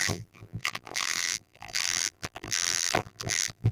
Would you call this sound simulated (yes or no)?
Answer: yes